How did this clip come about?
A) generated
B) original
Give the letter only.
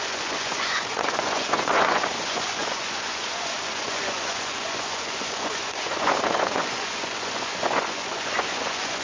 A